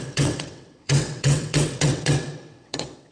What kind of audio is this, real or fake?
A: fake